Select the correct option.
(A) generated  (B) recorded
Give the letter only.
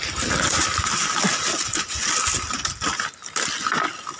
B